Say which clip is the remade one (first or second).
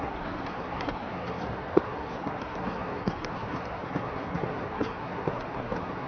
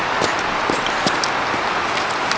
first